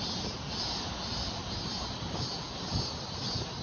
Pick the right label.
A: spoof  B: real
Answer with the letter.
B